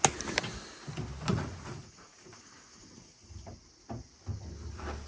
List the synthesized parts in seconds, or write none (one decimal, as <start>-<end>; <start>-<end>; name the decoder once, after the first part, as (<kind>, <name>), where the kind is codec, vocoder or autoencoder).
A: 1.3-3.5 (vocoder, Vocos)

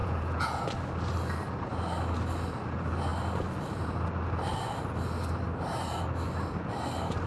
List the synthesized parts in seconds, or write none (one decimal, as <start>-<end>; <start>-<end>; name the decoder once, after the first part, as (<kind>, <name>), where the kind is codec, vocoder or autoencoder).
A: 0.0-0.6 (vocoder, Vocos)

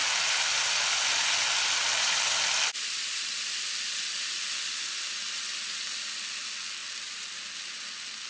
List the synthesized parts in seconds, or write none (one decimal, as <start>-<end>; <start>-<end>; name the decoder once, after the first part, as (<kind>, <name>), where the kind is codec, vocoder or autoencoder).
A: none

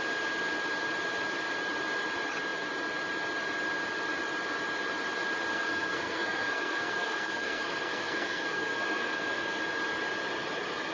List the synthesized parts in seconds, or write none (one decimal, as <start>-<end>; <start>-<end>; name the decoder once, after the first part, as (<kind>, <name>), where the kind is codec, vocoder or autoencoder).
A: 5.5-9.6 (codec, SNAC)

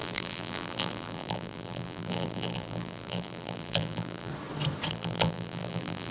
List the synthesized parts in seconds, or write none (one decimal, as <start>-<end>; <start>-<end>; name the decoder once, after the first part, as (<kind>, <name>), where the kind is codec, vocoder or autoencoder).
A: 0.0-4.3 (vocoder, BigVGAN v2); 4.9-6.1

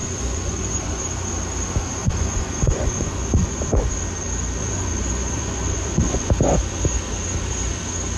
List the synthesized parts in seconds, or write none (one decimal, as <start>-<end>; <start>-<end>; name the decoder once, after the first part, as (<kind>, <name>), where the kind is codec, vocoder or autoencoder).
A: 0.0-1.0 (vocoder, Vocos); 2.0-3.8; 4.6-6.3